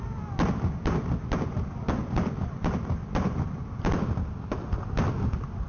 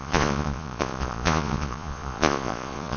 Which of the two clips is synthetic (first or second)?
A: second